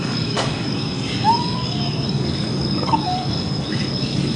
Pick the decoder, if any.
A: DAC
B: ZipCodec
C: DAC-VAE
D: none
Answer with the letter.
A